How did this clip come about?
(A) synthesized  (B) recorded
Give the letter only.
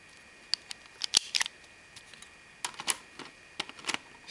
B